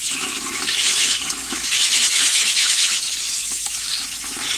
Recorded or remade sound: remade